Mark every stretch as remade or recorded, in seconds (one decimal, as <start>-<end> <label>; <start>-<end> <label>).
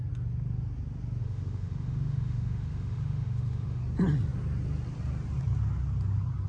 0.0-1.2 recorded; 1.2-3.8 remade; 3.8-6.5 recorded